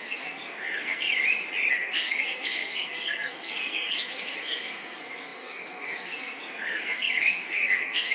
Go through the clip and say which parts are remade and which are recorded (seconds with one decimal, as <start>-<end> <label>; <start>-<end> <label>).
0.0-1.1 remade; 1.1-1.7 recorded; 1.7-8.1 remade